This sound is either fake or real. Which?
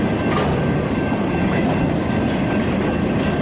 real